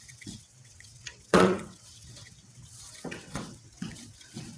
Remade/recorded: remade